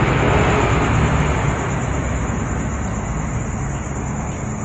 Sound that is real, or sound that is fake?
real